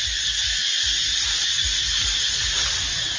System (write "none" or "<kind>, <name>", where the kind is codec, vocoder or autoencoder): none